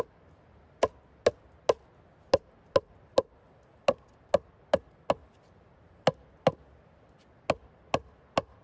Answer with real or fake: real